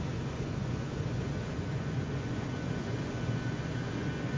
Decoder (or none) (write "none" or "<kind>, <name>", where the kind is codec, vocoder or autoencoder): vocoder, Vocos